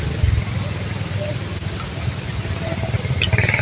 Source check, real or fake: real